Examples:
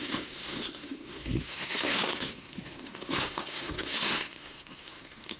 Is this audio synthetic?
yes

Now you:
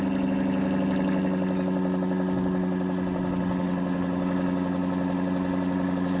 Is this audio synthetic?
no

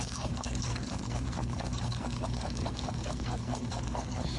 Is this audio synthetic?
yes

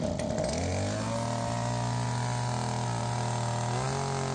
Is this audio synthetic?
no